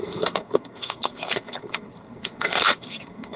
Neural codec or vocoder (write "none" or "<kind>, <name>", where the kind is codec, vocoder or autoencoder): codec, SNAC